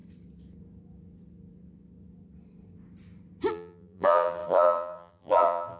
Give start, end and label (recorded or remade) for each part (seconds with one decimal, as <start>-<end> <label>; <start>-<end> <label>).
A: 0.0-3.5 recorded; 3.5-5.8 remade